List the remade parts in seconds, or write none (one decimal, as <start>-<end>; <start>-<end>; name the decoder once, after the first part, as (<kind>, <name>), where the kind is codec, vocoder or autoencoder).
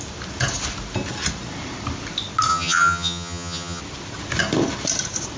2.5-3.8 (vocoder, HiFi-GAN)